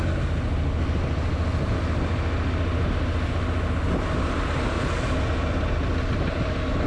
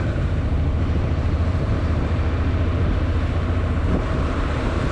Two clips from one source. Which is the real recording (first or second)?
first